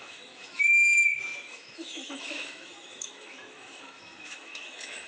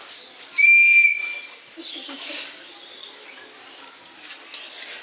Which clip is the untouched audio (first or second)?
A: second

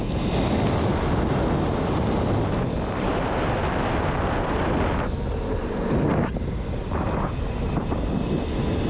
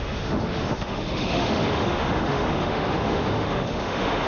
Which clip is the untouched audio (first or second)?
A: first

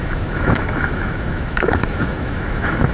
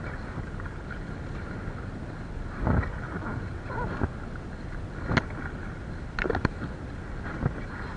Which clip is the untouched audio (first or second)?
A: second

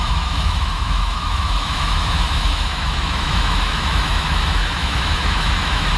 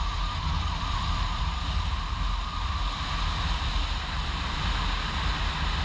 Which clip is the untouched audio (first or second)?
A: second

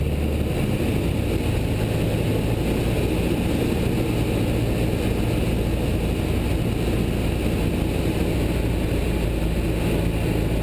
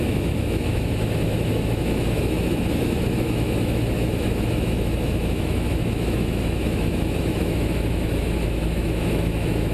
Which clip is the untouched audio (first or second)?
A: first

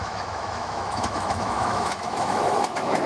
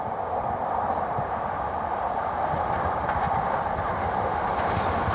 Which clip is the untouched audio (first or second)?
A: second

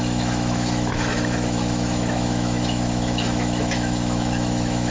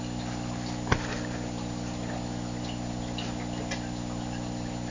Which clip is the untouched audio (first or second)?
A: second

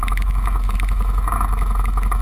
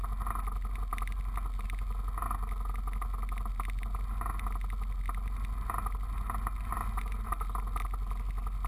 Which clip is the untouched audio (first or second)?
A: second